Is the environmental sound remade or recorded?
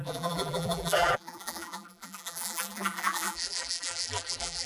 remade